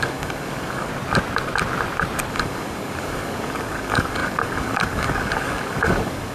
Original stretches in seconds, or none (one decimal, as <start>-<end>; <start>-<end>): 0.9-2.3